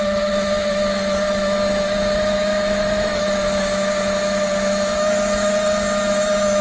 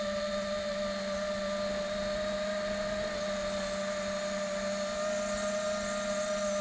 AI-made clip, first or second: first